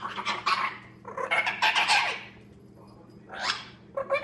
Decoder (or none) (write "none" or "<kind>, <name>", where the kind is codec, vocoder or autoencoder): vocoder, BigVGAN v2